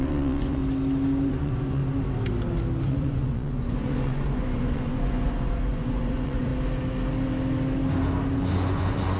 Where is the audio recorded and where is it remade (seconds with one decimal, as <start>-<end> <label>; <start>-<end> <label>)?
0.0-0.6 remade; 0.6-1.3 recorded; 1.3-1.8 remade; 1.8-2.9 recorded; 2.9-6.5 remade; 6.5-8.5 recorded; 8.5-9.2 remade